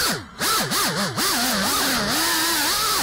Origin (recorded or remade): recorded